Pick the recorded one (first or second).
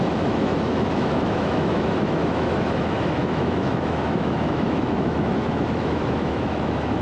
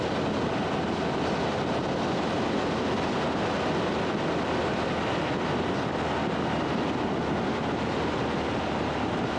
second